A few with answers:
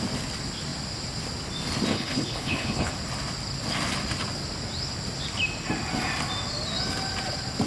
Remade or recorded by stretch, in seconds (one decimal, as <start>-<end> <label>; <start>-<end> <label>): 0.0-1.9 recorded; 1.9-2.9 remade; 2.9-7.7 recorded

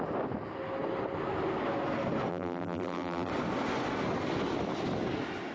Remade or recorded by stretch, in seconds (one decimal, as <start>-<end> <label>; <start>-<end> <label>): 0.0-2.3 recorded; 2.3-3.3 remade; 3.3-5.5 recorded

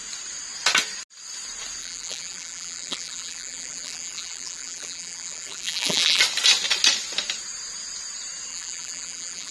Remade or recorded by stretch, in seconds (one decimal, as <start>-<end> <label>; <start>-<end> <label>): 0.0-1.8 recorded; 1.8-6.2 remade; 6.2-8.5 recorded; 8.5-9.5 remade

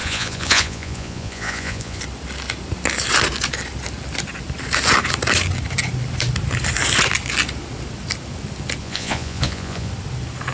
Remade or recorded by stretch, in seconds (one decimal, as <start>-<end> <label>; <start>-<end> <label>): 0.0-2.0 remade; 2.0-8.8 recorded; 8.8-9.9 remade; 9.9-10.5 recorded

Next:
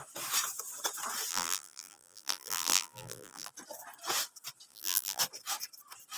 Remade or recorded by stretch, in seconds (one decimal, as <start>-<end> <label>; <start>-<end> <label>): 0.0-1.3 recorded; 1.3-3.5 remade; 3.5-4.7 recorded; 4.7-5.2 remade; 5.2-6.2 recorded

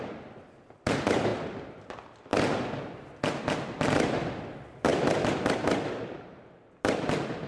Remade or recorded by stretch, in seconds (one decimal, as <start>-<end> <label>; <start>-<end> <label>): 0.0-7.5 recorded